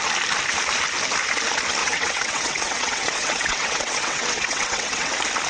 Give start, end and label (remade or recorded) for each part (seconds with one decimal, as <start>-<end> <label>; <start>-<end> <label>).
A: 0.0-1.8 recorded; 1.8-5.1 remade; 5.1-5.5 recorded